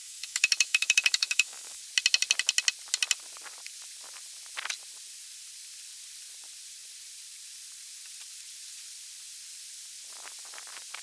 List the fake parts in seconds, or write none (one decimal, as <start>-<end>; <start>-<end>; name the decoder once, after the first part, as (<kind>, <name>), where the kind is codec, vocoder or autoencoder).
0.0-1.8 (autoencoder, DAC-VAE)